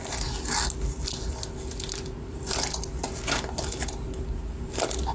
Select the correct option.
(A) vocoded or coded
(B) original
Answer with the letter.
B